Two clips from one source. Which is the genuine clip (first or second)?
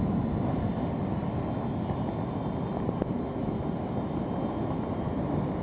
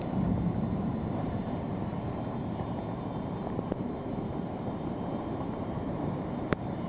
first